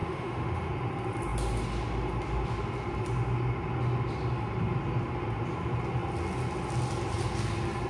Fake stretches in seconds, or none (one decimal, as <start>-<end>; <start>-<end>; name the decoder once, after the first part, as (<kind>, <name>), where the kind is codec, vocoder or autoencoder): 0.0-0.7 (autoencoder, DAC-VAE)